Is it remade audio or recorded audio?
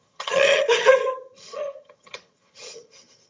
remade